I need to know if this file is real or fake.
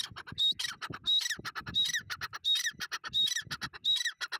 real